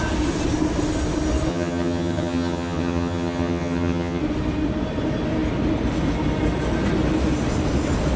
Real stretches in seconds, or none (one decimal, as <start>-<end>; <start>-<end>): 0.0-1.5; 4.2-8.2